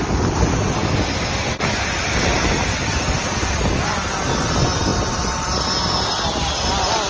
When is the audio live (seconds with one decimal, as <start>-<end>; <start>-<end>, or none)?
0.0-7.1